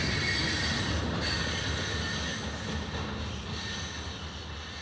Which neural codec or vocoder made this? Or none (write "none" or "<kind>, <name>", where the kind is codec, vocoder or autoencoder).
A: none